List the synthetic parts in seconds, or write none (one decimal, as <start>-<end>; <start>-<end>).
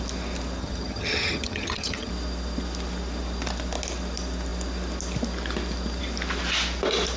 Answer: 0.6-2.1